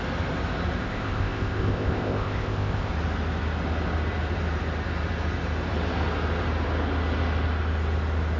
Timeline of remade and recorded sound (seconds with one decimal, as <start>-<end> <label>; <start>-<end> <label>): 0.0-0.8 recorded; 0.8-2.9 remade; 2.9-8.4 recorded